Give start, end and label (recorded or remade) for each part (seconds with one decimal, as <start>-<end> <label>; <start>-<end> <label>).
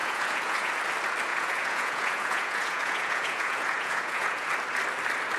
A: 0.0-0.8 remade; 0.8-1.3 recorded; 1.3-4.5 remade; 4.5-5.4 recorded